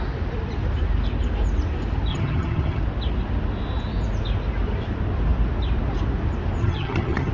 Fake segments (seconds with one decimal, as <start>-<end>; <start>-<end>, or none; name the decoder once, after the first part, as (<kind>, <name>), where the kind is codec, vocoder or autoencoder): 2.1-2.8 (vocoder, HiFi-GAN); 6.6-7.3